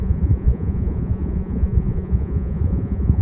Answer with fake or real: fake